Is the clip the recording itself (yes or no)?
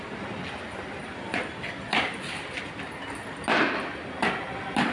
yes